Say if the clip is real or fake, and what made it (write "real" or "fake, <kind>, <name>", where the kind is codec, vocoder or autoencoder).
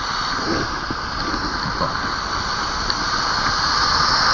real